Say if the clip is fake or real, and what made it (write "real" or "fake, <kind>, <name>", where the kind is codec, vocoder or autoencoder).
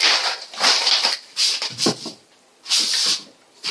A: fake, vocoder, BigVGAN v2